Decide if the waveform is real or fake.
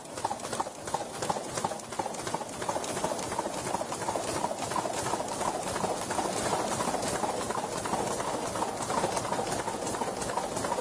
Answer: real